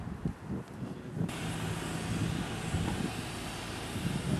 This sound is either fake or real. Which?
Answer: real